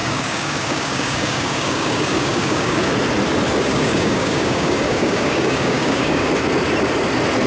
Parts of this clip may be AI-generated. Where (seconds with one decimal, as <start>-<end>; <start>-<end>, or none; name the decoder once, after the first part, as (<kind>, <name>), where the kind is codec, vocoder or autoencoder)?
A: 0.0-2.9 (codec, DAC); 3.7-6.3